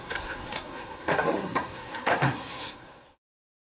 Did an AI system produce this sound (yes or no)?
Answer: yes